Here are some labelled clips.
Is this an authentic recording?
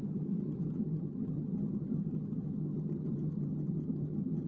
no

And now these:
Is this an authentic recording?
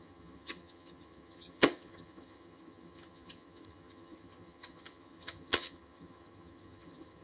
no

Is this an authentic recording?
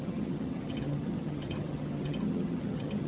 no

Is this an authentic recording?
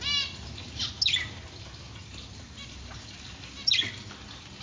yes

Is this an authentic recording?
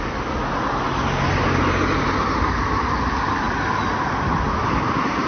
yes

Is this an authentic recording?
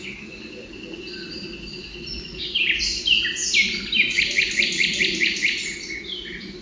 yes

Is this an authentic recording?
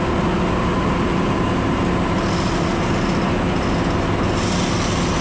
yes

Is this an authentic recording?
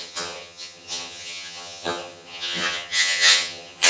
no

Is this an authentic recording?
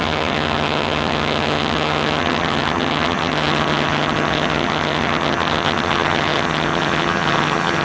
no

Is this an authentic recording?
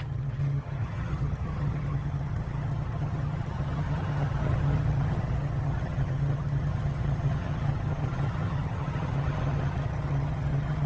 no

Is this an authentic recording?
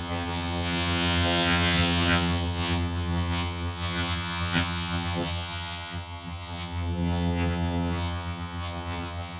no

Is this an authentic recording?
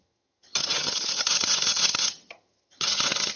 no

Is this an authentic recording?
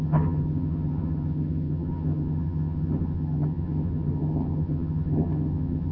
no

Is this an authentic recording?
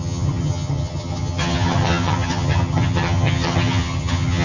no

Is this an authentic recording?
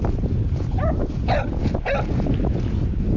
yes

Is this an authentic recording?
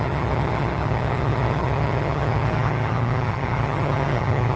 no